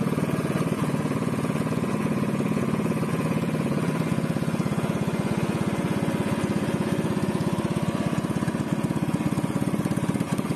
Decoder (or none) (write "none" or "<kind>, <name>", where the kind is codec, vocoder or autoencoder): vocoder, Vocos